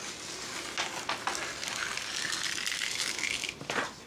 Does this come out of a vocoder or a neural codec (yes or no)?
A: no